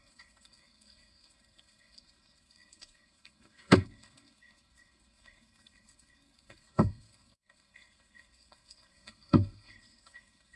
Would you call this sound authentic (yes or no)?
no